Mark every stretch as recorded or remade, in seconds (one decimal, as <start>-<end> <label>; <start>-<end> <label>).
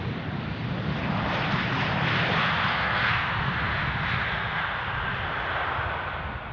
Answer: 0.0-2.7 recorded; 2.7-3.3 remade; 3.3-6.5 recorded